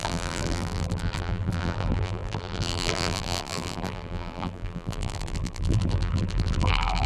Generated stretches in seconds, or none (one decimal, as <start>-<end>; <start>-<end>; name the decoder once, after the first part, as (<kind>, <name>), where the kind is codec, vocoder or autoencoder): 0.0-7.1 (vocoder, BigVGAN v2)